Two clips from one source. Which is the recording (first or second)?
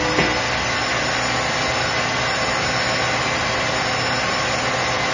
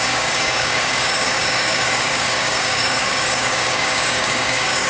first